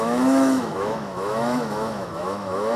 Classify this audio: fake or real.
fake